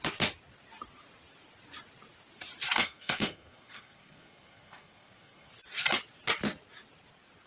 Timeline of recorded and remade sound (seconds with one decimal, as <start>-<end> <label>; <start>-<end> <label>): 0.0-2.8 recorded; 2.8-5.5 remade; 5.5-7.5 recorded